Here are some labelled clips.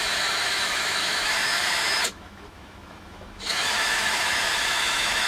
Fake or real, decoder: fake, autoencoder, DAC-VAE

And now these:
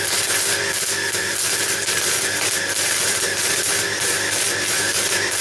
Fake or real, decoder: fake, vocoder, BigVGAN v2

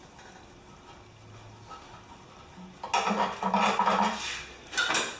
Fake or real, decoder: real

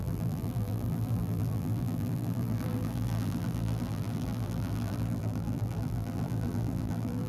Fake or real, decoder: fake, vocoder, BigVGAN v2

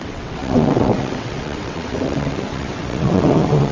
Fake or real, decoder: fake, vocoder, WaveNeXt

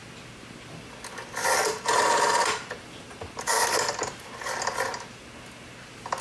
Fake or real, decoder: real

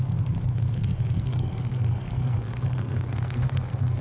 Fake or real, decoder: fake, codec, SNAC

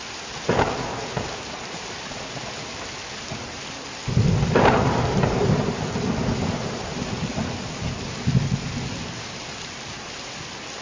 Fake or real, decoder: real